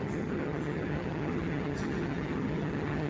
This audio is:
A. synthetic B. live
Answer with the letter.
A